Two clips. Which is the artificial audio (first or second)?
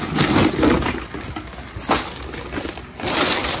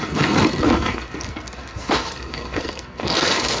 second